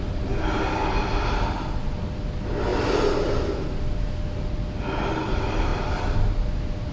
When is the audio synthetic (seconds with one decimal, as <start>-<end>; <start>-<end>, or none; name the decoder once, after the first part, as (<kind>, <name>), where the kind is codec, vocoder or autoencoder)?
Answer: none